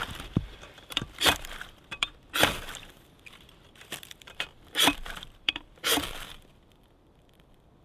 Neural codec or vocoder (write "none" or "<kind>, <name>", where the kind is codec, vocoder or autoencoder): vocoder, BigVGAN v2